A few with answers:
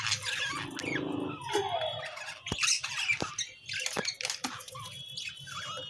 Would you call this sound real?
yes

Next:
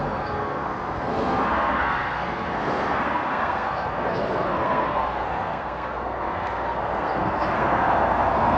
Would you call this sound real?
no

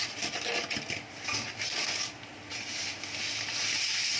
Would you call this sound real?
yes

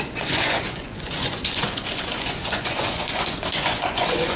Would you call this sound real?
no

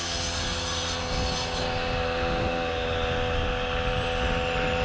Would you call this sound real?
yes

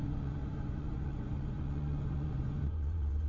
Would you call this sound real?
no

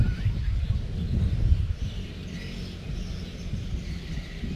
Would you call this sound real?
yes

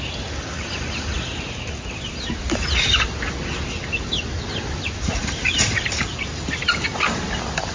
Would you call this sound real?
yes